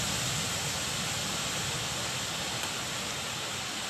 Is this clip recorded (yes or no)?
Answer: yes